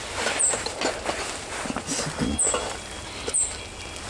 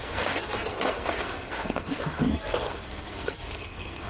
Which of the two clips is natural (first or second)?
first